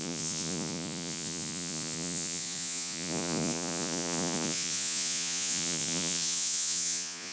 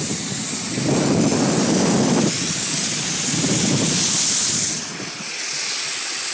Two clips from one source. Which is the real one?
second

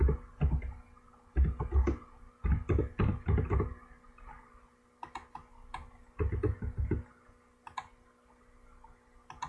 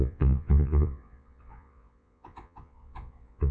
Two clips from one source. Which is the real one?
first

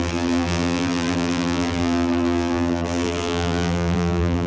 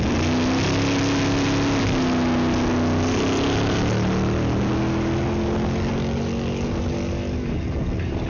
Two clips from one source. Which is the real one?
second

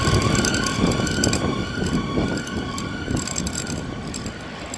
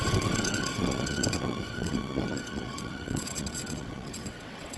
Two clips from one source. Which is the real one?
first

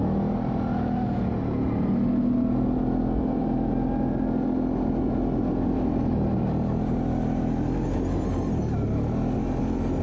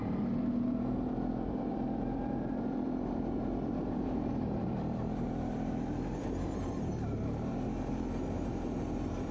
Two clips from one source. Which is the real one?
first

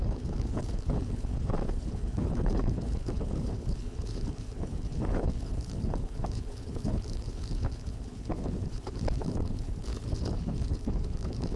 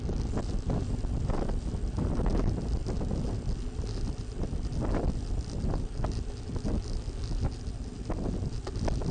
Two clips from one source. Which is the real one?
second